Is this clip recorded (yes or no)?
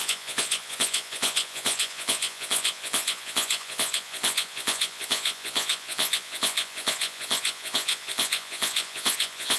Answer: no